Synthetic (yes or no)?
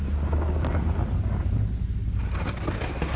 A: no